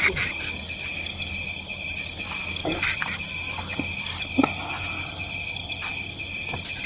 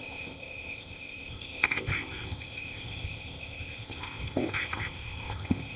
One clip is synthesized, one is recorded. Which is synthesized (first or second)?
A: second